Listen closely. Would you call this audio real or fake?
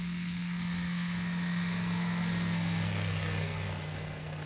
fake